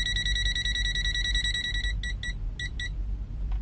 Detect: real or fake real